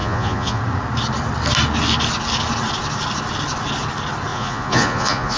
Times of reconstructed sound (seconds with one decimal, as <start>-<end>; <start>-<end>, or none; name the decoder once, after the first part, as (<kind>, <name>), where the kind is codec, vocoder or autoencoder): 0.0-0.6 (vocoder, Vocos); 4.3-5.4